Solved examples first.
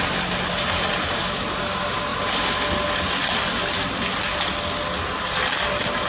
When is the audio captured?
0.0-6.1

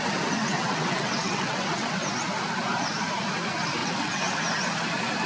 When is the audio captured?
0.0-0.4; 1.9-3.8; 4.4-5.3

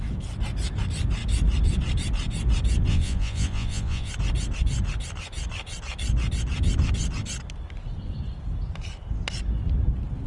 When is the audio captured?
0.0-2.9; 4.1-10.3

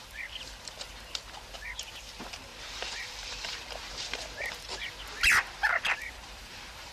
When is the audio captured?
0.0-2.5; 3.6-5.6

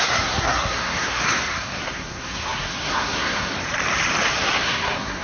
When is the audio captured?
3.5-4.3